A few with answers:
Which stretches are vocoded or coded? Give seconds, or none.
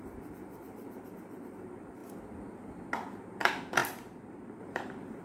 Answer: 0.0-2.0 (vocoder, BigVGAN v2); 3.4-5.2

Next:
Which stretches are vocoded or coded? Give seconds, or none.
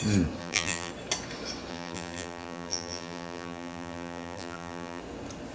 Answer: 0.4-0.9 (vocoder, BigVGAN v2); 1.7-5.0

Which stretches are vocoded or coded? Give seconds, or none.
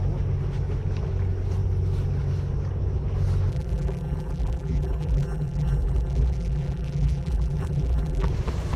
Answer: 3.5-8.3 (vocoder, BigVGAN v2)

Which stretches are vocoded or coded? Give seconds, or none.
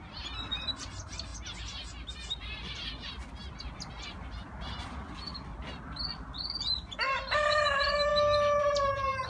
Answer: 0.0-1.3 (vocoder, BigVGAN v2); 3.3-5.5; 6.7-8.1; 8.6-9.3